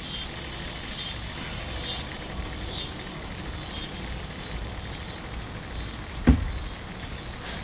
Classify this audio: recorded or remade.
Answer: recorded